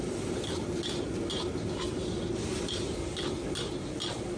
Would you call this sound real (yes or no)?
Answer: yes